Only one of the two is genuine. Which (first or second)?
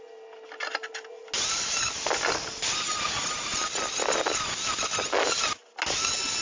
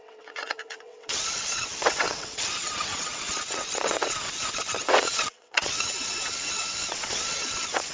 first